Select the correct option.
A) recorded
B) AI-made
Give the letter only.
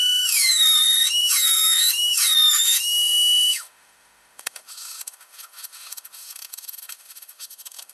B